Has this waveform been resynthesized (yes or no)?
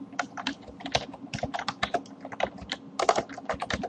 no